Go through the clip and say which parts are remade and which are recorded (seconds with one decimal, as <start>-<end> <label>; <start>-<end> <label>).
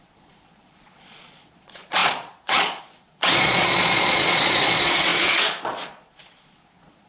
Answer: 0.0-7.1 remade